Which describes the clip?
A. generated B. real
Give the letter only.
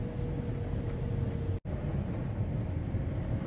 B